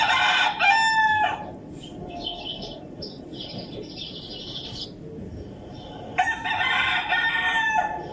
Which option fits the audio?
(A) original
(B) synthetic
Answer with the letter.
A